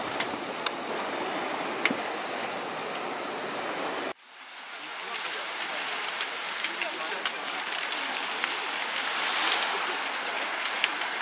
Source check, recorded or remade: recorded